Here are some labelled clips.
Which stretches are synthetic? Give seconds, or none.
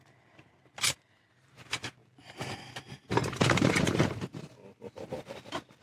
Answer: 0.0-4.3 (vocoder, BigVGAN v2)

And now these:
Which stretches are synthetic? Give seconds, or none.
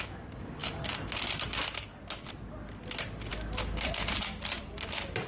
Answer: 0.0-0.6 (vocoder, BigVGAN v2); 2.0-5.3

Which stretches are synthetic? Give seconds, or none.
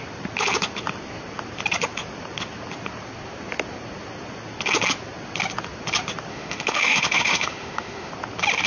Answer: 6.3-8.1 (autoencoder, DAC-VAE)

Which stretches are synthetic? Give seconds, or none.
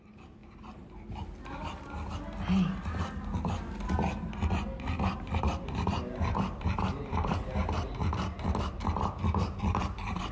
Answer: 0.0-0.4 (vocoder, BigVGAN v2); 5.4-7.6; 9.1-10.3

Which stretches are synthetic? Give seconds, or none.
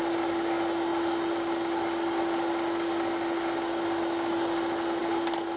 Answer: none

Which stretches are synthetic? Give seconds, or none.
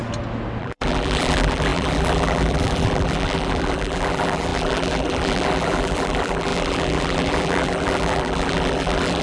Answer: 0.6-9.2 (vocoder, BigVGAN v2)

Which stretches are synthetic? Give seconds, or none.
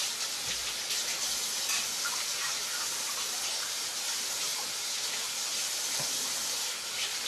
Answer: none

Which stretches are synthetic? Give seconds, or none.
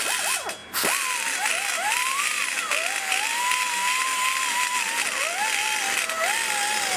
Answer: none